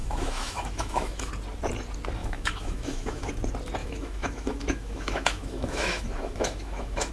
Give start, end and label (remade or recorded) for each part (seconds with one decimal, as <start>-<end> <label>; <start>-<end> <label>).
0.0-1.3 remade; 1.3-2.2 recorded; 2.2-3.3 remade; 3.3-3.8 recorded; 3.8-7.1 remade

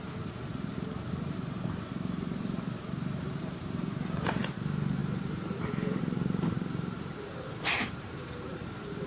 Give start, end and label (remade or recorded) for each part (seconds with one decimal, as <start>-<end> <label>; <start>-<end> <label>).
0.0-0.5 remade; 0.5-1.8 recorded; 1.8-9.1 remade

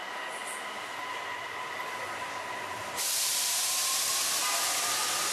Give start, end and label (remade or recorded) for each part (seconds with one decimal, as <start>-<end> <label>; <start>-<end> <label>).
0.0-5.3 recorded

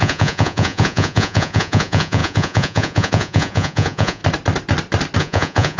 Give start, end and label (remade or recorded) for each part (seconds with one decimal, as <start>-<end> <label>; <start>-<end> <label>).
0.0-4.2 remade; 4.2-5.2 recorded; 5.2-5.8 remade

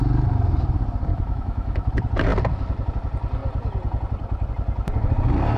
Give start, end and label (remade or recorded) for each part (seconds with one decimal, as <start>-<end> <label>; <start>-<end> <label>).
0.0-1.1 recorded; 1.1-1.9 remade; 1.9-5.6 recorded

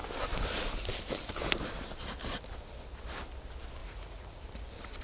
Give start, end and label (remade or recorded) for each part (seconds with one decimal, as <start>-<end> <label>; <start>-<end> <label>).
0.0-3.8 recorded; 3.8-4.4 remade; 4.4-5.0 recorded

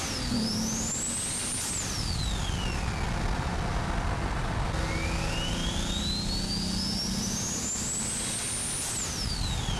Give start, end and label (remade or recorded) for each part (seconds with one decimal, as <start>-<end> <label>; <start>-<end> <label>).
0.0-9.8 recorded

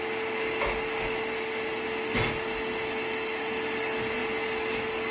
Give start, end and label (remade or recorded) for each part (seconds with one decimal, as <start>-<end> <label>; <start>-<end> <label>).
0.0-5.1 recorded